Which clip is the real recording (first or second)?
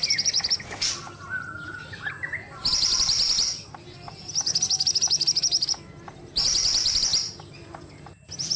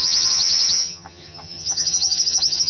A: first